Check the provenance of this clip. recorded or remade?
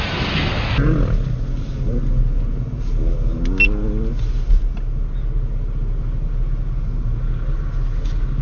recorded